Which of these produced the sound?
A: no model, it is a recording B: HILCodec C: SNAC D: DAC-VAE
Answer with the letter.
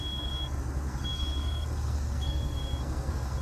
C